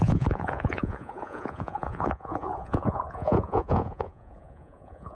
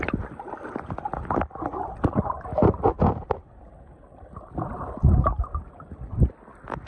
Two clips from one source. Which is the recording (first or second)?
second